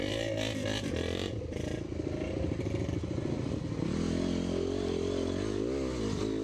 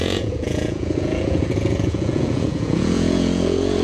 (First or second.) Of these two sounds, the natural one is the first